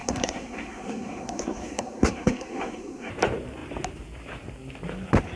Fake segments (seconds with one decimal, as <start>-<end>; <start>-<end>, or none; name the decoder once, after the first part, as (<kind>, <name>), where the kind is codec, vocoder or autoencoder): 0.0-3.1 (codec, SNAC)